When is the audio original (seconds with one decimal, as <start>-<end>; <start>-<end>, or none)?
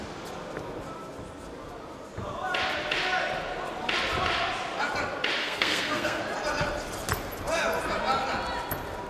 0.0-5.4; 6.2-9.1